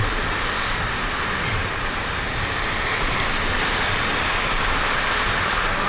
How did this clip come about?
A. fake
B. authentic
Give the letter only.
A